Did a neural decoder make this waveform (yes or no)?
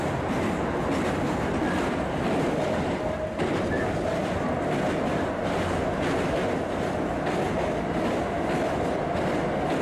no